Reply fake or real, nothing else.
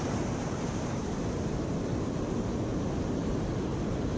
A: fake